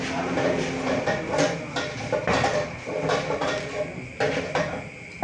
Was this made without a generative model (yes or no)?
yes